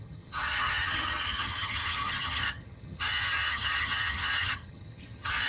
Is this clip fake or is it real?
fake